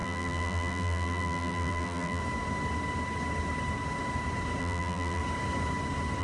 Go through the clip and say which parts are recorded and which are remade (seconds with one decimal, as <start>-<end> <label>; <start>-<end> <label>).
0.0-2.2 remade; 2.2-4.6 recorded; 4.6-5.2 remade; 5.2-6.2 recorded